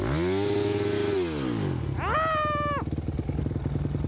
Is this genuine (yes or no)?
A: yes